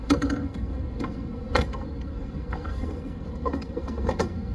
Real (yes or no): no